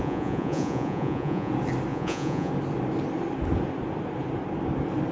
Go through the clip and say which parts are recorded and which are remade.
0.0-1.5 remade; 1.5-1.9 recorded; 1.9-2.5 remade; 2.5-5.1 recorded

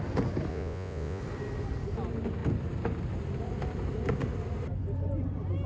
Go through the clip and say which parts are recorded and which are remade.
0.0-0.5 recorded; 0.5-1.2 remade; 1.2-5.7 recorded

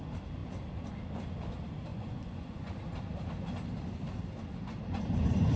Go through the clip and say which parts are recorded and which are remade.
0.0-1.9 recorded; 1.9-2.6 remade; 2.6-5.6 recorded

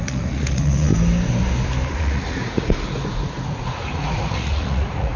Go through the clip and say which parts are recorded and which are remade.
0.0-0.9 remade; 0.9-1.9 recorded; 1.9-5.2 remade

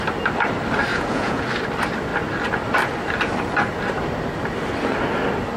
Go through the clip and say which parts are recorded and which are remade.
0.0-0.9 recorded; 0.9-1.5 remade; 1.5-5.6 recorded

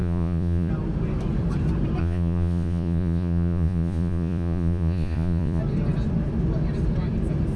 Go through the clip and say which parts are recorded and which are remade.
0.0-0.7 remade; 0.7-2.0 recorded; 2.0-5.6 remade; 5.6-7.6 recorded

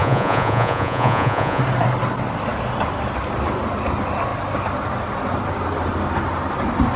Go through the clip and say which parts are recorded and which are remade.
0.0-1.6 remade; 1.6-7.0 recorded